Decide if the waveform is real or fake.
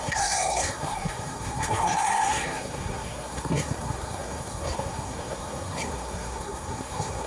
fake